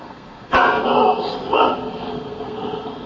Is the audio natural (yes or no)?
no